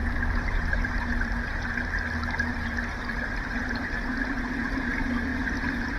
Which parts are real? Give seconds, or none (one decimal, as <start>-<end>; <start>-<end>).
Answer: 1.8-2.5; 4.5-6.0